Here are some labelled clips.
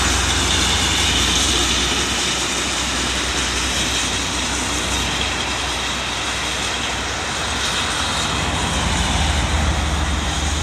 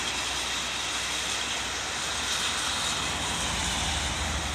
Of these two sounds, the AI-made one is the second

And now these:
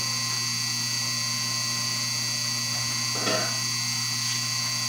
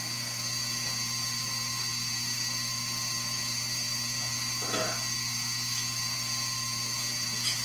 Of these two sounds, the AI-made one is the second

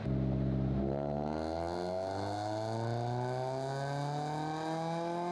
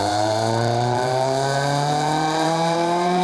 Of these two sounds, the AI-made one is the second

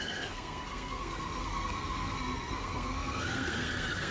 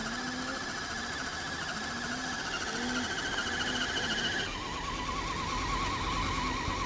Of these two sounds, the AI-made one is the first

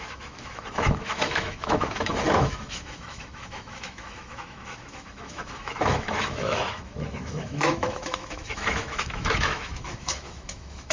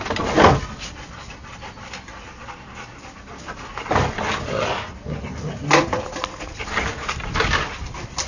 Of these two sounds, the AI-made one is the first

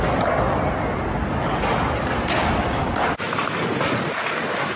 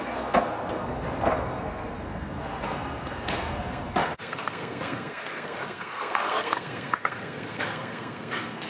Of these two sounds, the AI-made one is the second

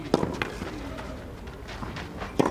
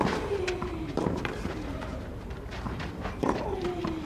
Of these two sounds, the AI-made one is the second